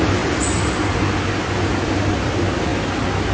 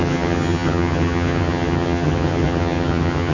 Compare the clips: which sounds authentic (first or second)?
first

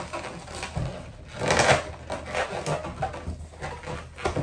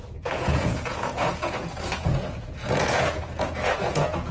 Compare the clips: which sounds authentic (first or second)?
first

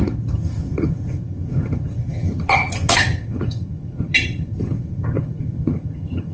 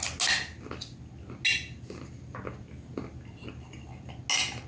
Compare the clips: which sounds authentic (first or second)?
second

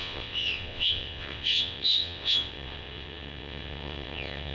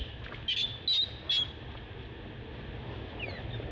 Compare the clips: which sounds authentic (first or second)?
second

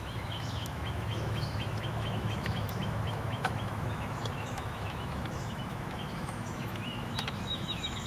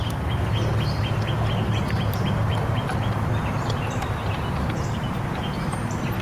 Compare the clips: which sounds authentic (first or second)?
second